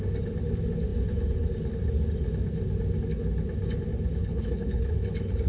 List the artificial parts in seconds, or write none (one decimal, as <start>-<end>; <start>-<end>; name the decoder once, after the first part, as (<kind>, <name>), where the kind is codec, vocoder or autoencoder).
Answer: 4.2-5.5 (codec, HILCodec)